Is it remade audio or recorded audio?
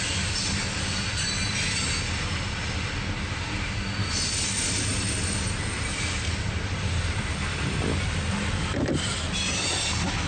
recorded